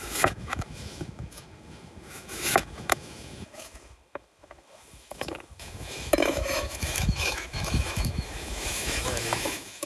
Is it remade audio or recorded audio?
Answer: remade